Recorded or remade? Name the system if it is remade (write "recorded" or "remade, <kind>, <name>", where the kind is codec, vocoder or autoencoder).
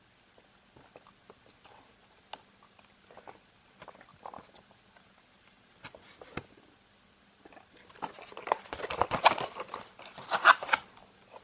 recorded